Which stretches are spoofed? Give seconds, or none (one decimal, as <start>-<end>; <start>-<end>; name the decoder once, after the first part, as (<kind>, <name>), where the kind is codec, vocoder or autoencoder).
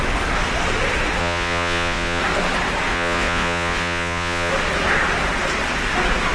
1.2-2.2 (vocoder, Vocos); 2.9-4.5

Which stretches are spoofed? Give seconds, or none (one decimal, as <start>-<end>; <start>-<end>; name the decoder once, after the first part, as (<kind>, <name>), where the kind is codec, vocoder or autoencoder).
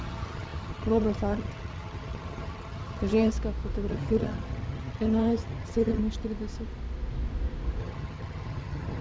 0.0-3.3 (vocoder, HiFi-GAN); 3.9-6.0; 7.8-9.0